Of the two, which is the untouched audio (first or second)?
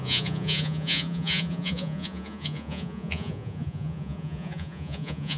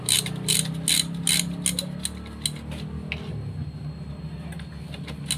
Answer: second